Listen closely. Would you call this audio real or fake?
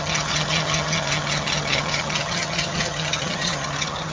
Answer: fake